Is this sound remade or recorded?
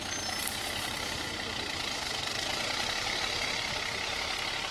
recorded